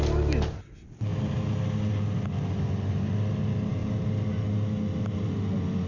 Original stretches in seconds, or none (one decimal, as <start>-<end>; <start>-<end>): 0.0-5.9